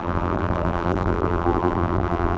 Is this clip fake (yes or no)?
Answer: yes